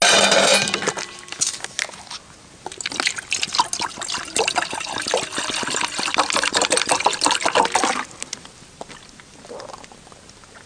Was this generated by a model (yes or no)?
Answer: no